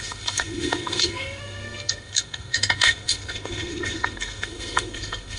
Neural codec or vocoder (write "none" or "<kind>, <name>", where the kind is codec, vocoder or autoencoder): codec, SNAC